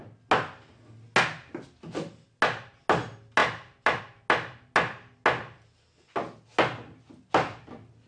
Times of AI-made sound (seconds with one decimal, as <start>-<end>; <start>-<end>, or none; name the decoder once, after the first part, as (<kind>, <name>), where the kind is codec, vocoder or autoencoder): none

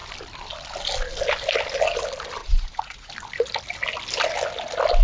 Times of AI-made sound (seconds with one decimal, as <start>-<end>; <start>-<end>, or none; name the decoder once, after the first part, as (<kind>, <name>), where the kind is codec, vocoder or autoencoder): 2.4-3.1 (vocoder, Vocos)

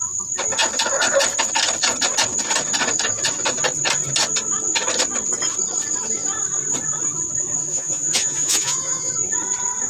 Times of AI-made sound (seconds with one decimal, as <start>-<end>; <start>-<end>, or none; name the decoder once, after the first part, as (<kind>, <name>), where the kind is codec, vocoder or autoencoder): 7.7-9.1 (vocoder, Vocos)

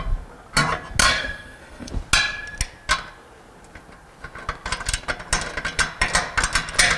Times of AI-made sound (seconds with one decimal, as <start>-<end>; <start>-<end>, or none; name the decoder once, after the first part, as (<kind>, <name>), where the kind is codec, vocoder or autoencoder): 1.0-1.9 (codec, SNAC)